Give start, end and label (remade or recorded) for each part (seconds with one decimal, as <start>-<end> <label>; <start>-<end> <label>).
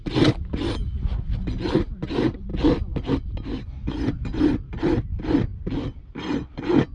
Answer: 0.0-6.9 recorded